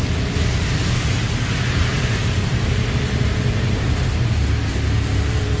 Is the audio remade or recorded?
remade